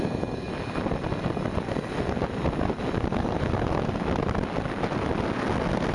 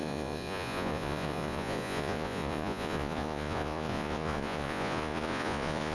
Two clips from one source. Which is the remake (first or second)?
second